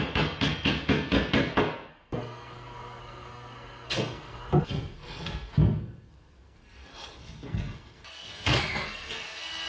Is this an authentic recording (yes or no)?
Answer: no